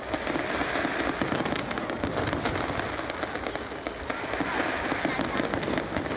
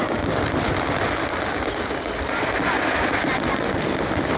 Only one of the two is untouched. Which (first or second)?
first